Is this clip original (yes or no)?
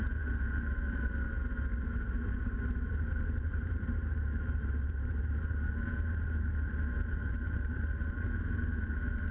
no